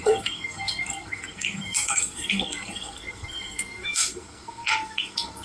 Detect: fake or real fake